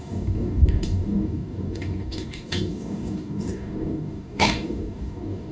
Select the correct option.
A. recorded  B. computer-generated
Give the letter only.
B